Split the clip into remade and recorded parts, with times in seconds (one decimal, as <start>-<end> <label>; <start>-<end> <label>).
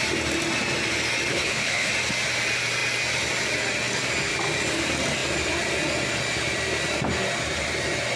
0.0-1.3 recorded; 1.3-1.9 remade; 1.9-8.2 recorded